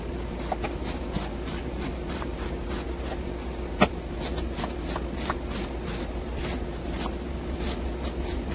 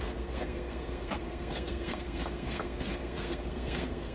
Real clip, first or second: first